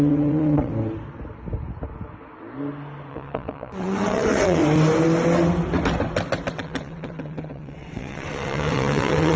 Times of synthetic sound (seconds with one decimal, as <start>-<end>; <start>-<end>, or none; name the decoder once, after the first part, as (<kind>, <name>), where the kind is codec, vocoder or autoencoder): 0.0-0.7 (vocoder, WaveNeXt); 3.1-4.6; 6.5-9.4